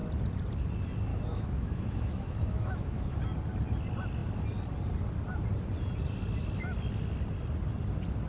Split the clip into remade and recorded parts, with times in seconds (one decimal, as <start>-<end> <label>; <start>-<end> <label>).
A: 0.0-1.1 recorded; 1.1-3.2 remade; 3.2-8.3 recorded

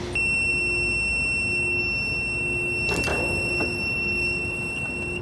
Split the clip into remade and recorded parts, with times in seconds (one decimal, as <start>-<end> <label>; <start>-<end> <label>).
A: 0.0-3.1 recorded; 3.1-5.2 remade

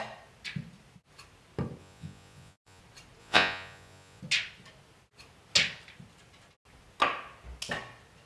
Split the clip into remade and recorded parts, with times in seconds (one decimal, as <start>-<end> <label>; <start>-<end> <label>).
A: 0.0-1.8 recorded; 1.8-2.8 remade; 2.8-3.2 recorded; 3.2-4.2 remade; 4.2-8.3 recorded

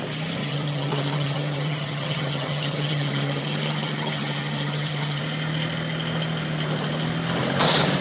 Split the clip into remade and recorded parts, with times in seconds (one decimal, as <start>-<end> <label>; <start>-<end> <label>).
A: 0.0-0.4 recorded; 0.4-5.2 remade; 5.2-8.0 recorded

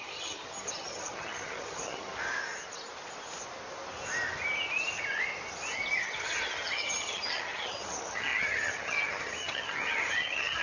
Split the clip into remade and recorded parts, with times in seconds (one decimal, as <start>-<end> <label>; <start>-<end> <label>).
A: 0.0-2.1 remade; 2.1-6.0 recorded; 6.0-10.6 remade

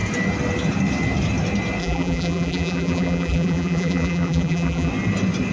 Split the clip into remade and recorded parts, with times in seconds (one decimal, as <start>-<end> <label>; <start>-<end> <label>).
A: 0.0-1.8 recorded; 1.8-4.9 remade; 4.9-5.5 recorded

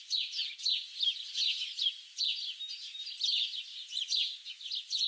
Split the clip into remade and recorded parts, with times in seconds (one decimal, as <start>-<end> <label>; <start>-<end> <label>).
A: 0.0-5.1 recorded